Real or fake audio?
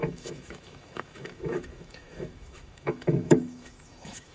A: fake